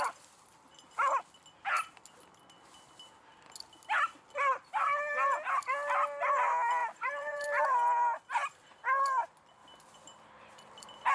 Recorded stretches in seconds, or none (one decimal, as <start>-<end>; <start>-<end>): 0.0-6.8; 7.6-9.6